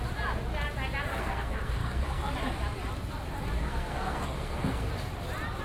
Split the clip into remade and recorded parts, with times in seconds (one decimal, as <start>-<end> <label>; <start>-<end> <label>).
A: 0.0-1.1 recorded; 1.1-2.3 remade; 2.3-3.6 recorded; 3.6-4.9 remade; 4.9-5.6 recorded